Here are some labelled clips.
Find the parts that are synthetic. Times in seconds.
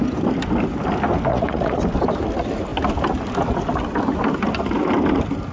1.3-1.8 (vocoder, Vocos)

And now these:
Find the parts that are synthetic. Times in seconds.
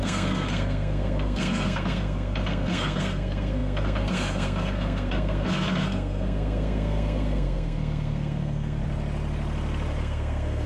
0.0-8.8 (codec, SNAC); 10.0-10.7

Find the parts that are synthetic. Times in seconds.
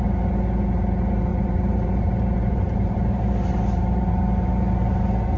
1.3-4.1 (vocoder, BigVGAN v2)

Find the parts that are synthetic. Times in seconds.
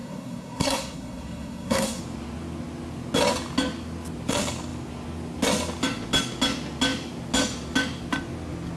0.0-2.0 (codec, SNAC)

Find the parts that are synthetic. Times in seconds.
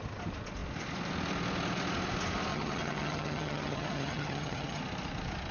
2.5-4.8 (vocoder, HiFi-GAN)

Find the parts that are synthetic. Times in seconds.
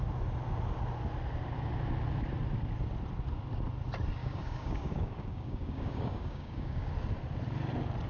4.2-6.9 (codec, DAC)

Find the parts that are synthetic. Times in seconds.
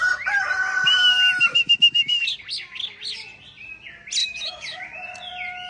1.5-2.2 (autoencoder, DAC-VAE); 4.2-4.8